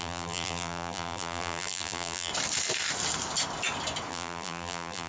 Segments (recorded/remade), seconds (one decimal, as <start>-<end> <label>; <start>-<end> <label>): 0.0-2.3 remade; 2.3-4.1 recorded; 4.1-5.1 remade